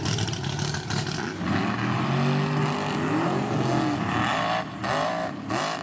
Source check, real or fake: real